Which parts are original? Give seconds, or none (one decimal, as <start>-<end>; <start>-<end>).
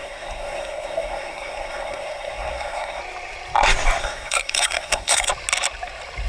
3.0-4.0; 5.3-6.3